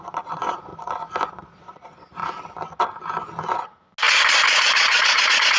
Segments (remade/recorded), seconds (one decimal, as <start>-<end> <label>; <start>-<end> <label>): 0.0-0.7 remade; 0.7-1.3 recorded; 1.3-2.2 remade; 2.2-4.6 recorded; 4.6-5.6 remade